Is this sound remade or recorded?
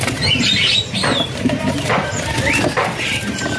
remade